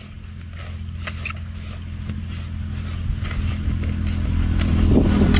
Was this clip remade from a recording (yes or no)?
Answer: no